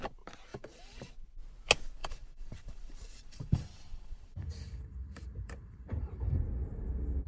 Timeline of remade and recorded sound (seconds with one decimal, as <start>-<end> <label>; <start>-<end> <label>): 0.0-0.5 recorded; 0.5-1.1 remade; 1.1-2.0 recorded; 2.0-6.4 remade; 6.4-7.3 recorded